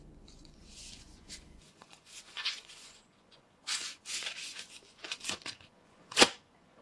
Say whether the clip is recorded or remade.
remade